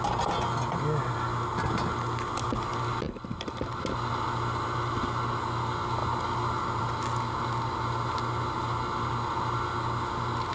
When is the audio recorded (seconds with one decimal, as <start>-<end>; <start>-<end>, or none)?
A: 0.0-10.5